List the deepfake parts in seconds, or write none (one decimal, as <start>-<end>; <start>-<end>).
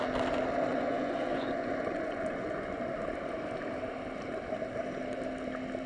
0.7-2.8